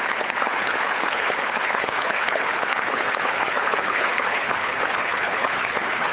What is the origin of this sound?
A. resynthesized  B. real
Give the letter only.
A